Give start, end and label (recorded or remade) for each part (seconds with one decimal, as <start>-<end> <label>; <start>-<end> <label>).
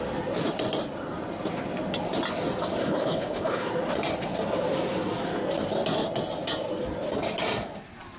0.0-2.8 recorded; 2.8-3.7 remade; 3.7-8.2 recorded